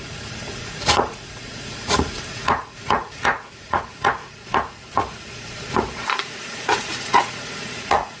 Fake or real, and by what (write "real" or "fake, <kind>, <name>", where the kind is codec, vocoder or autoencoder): fake, vocoder, Vocos